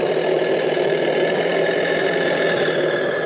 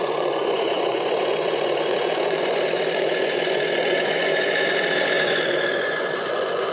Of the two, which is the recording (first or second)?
first